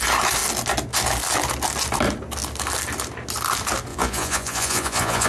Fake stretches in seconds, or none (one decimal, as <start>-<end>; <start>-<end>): 3.9-5.3

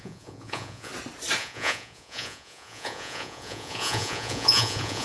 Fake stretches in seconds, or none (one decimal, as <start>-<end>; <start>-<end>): 0.0-0.9; 1.4-5.0

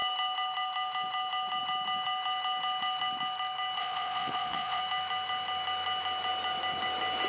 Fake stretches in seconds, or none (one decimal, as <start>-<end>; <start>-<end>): 3.8-4.8